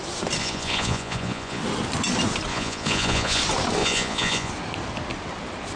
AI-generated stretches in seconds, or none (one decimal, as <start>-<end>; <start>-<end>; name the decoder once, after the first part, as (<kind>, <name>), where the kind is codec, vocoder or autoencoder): 0.4-1.6 (vocoder, Vocos); 2.5-3.4; 3.8-4.5